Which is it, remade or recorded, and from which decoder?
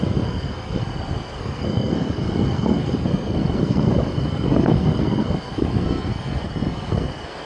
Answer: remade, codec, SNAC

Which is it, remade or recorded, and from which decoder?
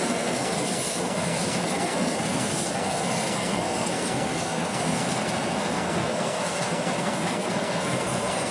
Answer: remade, codec, SNAC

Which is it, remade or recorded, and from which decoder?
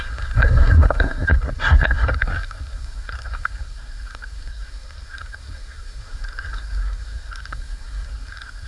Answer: remade, codec, SNAC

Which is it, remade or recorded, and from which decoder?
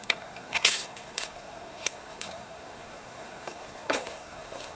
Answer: remade, codec, SNAC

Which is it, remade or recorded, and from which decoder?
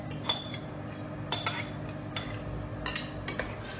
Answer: recorded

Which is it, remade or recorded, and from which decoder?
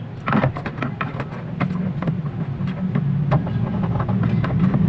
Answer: recorded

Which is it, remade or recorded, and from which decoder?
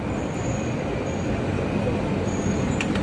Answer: recorded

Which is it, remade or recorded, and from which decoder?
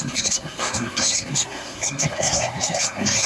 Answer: remade, codec, SNAC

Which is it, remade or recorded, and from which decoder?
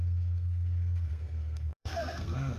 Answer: remade, codec, SNAC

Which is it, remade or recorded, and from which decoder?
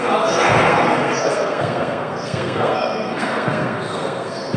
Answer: remade, codec, SNAC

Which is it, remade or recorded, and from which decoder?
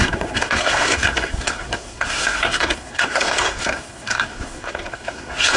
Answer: remade, codec, SNAC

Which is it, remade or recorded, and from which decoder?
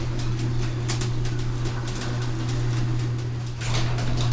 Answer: recorded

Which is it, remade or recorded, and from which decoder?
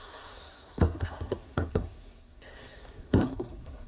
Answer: remade, codec, SNAC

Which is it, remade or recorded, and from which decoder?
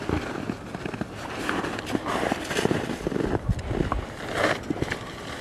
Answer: recorded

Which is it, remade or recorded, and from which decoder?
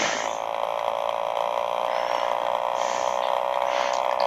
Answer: recorded